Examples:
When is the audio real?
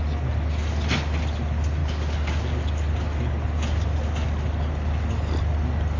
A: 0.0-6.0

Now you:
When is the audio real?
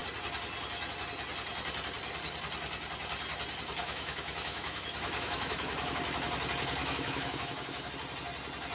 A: 0.0-3.8; 6.0-6.8; 7.9-8.7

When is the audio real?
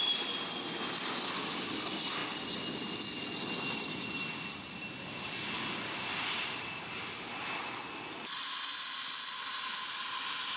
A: 0.0-10.6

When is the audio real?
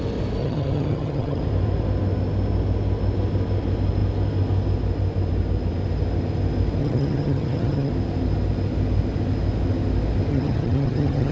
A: 0.0-0.4; 1.4-6.8; 7.9-10.3